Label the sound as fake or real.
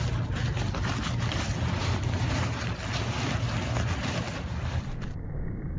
real